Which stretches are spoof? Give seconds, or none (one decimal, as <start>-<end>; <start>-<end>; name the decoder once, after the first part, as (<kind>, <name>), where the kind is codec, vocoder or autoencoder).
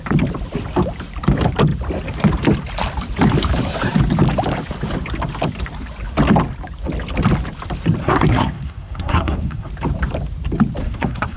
8.0-9.7 (codec, SNAC); 10.8-11.4